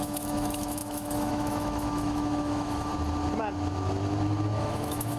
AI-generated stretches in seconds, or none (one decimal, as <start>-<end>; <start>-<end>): 0.0-2.9; 4.6-5.2